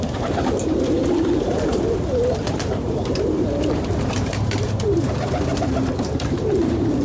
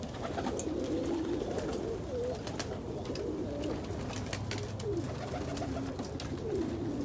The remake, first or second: first